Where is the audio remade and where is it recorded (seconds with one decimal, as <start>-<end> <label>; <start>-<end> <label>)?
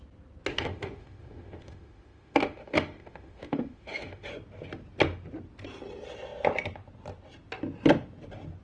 0.0-0.5 recorded; 0.5-4.3 remade; 4.3-8.6 recorded